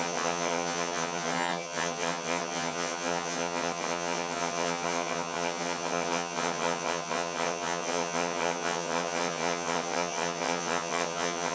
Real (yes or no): no